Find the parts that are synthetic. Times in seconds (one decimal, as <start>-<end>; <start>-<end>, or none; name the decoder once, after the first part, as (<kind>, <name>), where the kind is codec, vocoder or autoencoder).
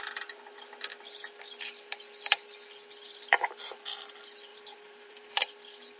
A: 4.5-5.4 (vocoder, BigVGAN v2)